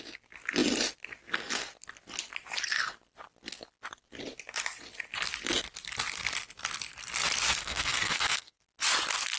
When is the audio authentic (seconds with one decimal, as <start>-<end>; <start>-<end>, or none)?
0.0-7.6; 8.6-9.4